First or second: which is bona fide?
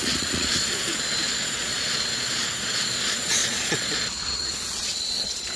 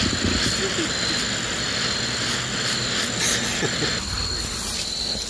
second